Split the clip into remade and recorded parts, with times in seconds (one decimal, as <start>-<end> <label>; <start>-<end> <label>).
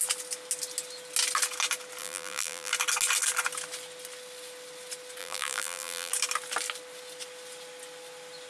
0.0-2.0 recorded; 2.0-2.7 remade; 2.7-5.2 recorded; 5.2-6.1 remade; 6.1-8.5 recorded